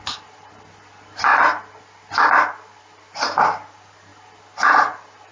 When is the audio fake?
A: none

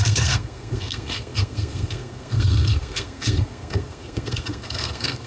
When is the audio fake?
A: 0.0-5.3 (codec, SNAC)